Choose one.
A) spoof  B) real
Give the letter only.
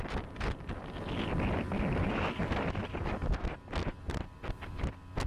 A